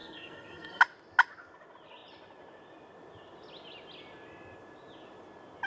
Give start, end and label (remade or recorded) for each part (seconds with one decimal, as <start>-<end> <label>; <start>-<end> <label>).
0.0-0.8 remade; 0.8-5.7 recorded